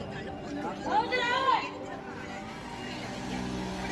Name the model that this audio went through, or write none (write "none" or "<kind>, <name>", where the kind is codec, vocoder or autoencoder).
none